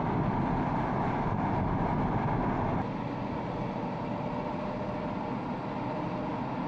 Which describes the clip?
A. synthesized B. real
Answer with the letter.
B